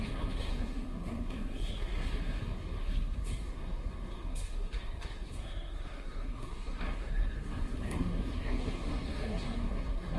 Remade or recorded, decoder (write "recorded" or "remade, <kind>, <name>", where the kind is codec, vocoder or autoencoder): remade, codec, SNAC